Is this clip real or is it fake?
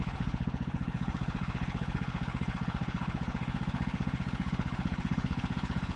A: fake